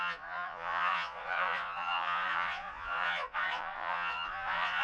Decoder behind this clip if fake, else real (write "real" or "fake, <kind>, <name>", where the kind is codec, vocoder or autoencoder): fake, vocoder, Vocos